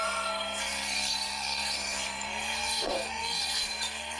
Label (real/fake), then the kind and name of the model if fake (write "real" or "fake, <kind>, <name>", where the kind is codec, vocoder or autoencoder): fake, codec, SNAC